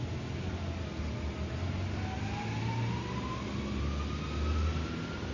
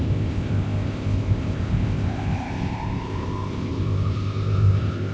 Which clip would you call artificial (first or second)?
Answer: second